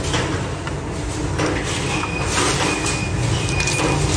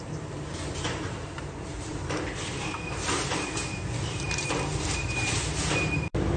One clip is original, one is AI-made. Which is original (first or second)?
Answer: first